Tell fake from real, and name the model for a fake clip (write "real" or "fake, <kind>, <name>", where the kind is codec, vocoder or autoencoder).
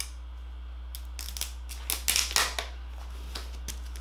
real